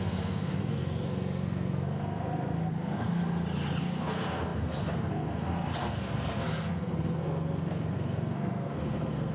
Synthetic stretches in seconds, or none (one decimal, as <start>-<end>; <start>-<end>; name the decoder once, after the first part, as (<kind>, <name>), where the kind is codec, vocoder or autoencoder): 0.0-3.2 (codec, SNAC); 3.8-9.3